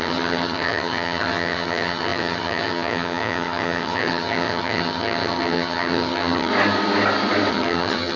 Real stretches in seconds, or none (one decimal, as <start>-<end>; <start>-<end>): 6.5-7.5